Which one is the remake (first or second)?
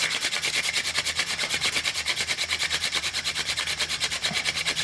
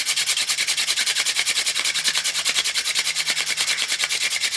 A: first